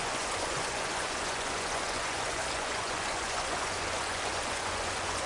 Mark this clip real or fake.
fake